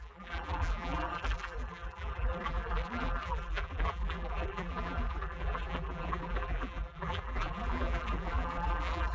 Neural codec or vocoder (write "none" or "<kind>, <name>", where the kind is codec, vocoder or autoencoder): vocoder, BigVGAN v2